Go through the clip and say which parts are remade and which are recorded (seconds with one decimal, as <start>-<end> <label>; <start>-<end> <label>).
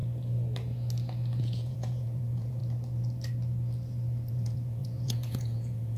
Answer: 0.0-1.4 recorded; 1.4-2.6 remade; 2.6-4.3 recorded; 4.3-6.0 remade